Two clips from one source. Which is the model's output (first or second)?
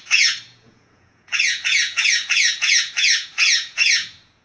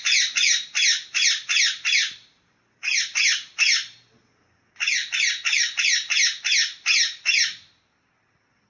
first